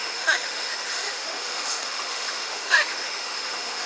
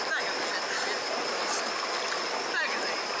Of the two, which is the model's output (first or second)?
first